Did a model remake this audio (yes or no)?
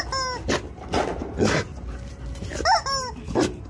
no